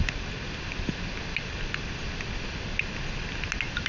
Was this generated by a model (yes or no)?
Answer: no